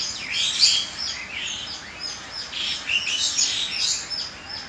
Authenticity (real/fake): real